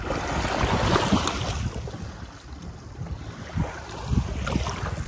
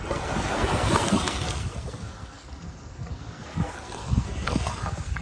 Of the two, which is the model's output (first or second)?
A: second